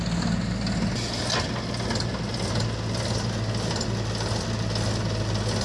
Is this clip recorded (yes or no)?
yes